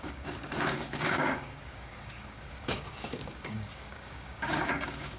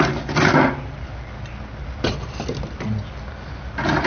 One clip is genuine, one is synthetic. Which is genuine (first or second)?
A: second